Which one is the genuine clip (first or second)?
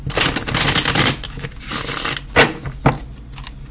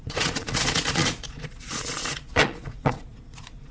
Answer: first